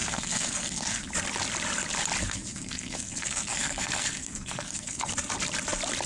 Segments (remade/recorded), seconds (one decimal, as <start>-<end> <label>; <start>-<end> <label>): 0.0-1.1 remade; 1.1-2.2 recorded; 2.2-5.1 remade; 5.1-6.1 recorded